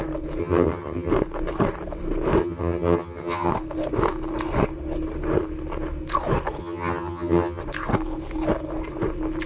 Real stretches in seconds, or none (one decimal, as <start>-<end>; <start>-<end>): 0.0-0.4; 1.1-2.4; 3.5-6.6; 7.6-9.5